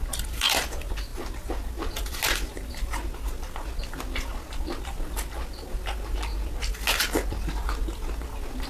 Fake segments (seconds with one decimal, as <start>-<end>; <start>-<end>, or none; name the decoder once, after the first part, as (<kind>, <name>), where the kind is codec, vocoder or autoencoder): none